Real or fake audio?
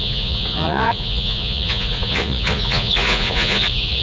fake